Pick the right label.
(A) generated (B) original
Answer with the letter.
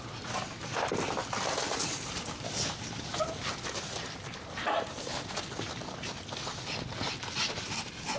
B